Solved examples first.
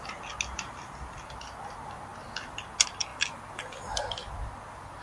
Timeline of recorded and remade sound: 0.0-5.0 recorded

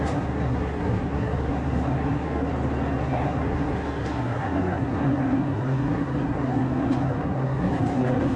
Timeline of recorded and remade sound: 0.0-2.5 remade; 2.5-3.0 recorded; 3.0-8.4 remade

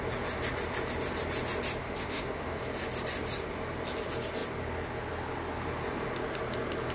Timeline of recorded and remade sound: 0.0-1.8 recorded; 1.8-2.6 remade; 2.6-6.9 recorded